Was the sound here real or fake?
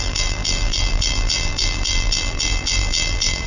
fake